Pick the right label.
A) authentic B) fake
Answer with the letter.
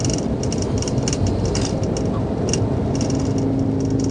A